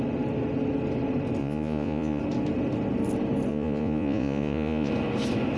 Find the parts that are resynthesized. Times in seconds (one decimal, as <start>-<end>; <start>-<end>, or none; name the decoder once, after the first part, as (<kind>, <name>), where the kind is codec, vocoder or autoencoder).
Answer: 1.4-2.2 (vocoder, Vocos); 3.5-4.9